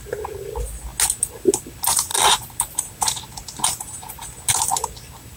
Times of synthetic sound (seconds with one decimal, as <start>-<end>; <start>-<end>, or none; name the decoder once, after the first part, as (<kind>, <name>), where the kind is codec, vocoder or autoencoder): none

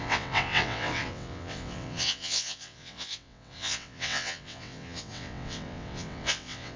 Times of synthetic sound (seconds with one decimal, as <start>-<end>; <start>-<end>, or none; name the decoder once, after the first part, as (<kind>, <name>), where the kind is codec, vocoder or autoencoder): 0.0-6.8 (vocoder, WaveNeXt)